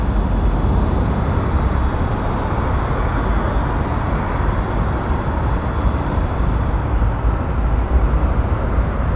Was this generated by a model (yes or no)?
no